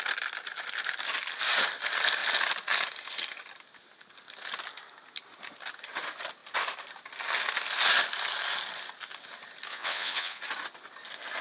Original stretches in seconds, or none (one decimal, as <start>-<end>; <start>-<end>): 0.0-9.7; 10.4-11.4